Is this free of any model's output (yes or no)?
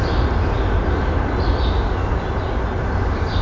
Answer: yes